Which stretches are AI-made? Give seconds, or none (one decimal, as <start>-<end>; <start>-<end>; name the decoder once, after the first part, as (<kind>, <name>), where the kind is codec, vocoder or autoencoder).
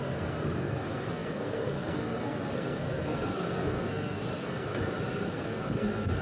0.0-4.7 (codec, SNAC); 5.3-6.2